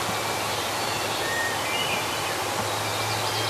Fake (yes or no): no